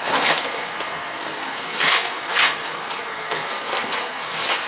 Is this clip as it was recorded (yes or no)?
no